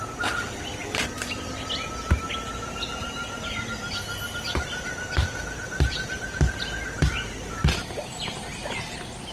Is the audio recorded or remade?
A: recorded